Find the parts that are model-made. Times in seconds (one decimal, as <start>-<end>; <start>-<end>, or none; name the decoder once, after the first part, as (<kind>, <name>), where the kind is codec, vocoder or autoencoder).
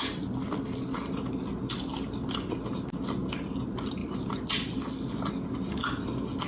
4.0-5.3 (vocoder, BigVGAN v2)